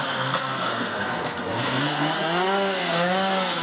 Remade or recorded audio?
remade